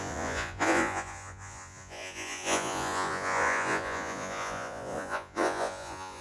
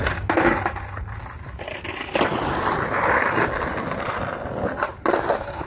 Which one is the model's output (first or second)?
first